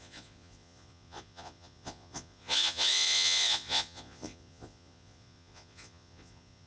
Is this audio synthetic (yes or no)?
yes